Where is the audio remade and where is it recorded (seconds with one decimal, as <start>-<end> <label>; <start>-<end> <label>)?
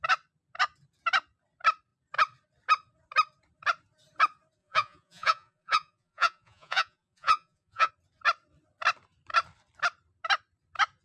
0.0-4.6 recorded; 4.6-7.9 remade; 7.9-11.0 recorded